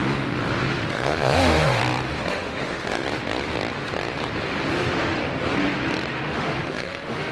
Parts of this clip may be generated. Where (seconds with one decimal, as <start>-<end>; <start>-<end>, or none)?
0.7-1.8; 2.3-3.0; 4.8-5.2; 6.1-7.3